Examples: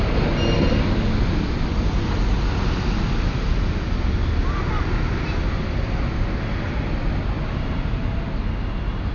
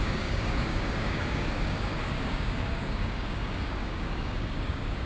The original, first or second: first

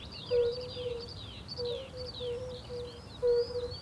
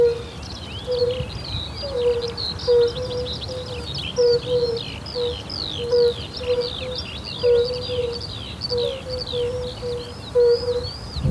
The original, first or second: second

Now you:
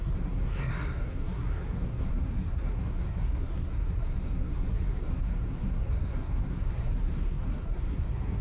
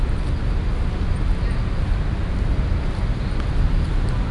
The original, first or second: second